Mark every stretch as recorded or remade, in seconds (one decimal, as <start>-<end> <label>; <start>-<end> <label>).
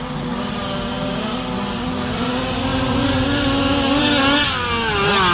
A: 0.0-5.3 recorded